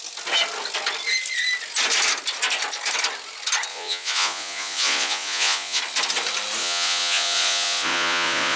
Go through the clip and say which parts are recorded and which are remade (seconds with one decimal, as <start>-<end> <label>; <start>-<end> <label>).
0.0-3.7 recorded; 3.7-5.8 remade; 5.8-6.6 recorded; 6.6-8.6 remade

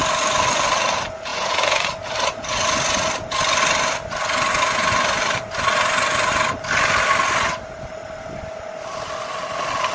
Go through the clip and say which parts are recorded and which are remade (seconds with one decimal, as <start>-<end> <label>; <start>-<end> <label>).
0.0-1.3 recorded; 1.3-1.9 remade; 1.9-9.9 recorded